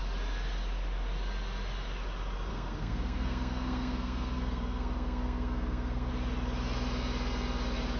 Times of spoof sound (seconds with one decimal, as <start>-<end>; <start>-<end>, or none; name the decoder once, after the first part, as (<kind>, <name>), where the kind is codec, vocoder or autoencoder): 2.5-6.1 (codec, SNAC)